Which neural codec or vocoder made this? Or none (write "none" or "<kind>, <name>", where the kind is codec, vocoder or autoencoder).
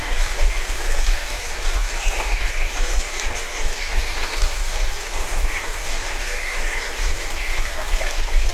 codec, DAC